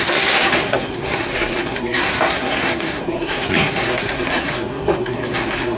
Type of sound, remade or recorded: remade